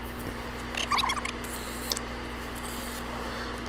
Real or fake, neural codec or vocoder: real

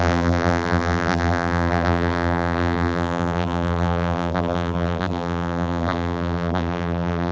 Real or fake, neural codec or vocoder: fake, vocoder, BigVGAN v2